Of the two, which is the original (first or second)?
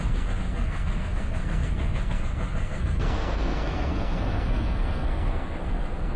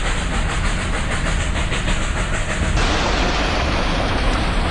second